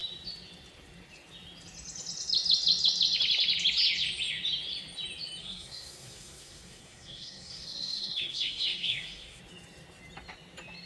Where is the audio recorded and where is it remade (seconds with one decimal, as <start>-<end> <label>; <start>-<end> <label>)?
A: 0.0-5.4 recorded; 5.4-9.4 remade; 9.4-10.9 recorded

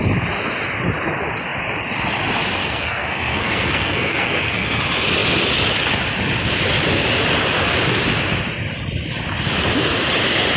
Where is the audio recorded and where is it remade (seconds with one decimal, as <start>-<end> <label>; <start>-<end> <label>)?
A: 0.0-2.6 recorded; 2.6-4.8 remade; 4.8-10.6 recorded

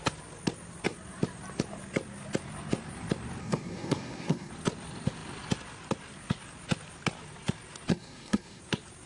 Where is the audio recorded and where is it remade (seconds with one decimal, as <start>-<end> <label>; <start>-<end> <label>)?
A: 0.0-3.4 recorded; 3.4-4.5 remade; 4.5-7.9 recorded; 7.9-8.6 remade; 8.6-9.1 recorded

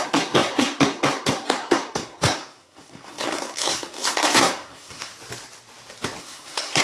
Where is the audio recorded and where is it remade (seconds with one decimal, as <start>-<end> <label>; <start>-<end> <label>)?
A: 0.0-5.1 remade; 5.1-6.2 recorded; 6.2-6.8 remade

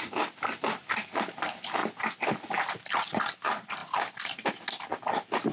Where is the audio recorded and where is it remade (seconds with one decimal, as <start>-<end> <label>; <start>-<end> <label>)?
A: 0.0-5.5 recorded